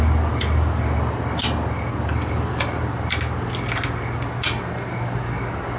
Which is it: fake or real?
real